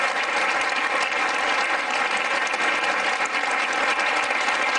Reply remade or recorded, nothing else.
recorded